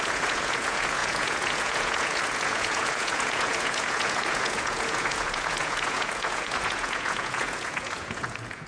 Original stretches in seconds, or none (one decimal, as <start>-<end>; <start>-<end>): none